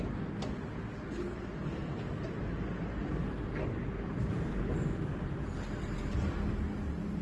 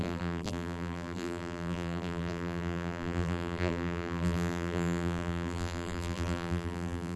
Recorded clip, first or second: first